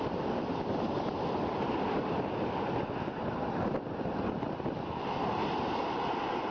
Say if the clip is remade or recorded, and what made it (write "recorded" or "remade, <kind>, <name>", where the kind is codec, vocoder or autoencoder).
recorded